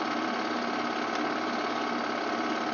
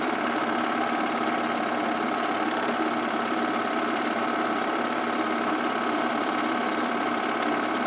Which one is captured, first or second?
first